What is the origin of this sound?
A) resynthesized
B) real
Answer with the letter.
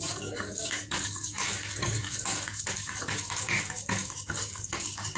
A